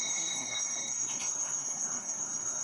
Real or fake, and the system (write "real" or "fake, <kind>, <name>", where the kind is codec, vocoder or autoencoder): fake, codec, SNAC